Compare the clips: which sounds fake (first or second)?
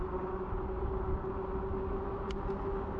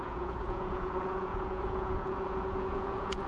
second